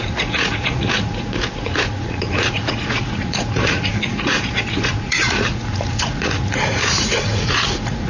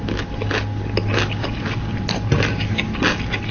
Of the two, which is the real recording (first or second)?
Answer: second